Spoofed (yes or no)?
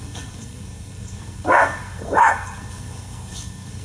yes